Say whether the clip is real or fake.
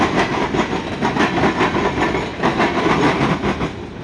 real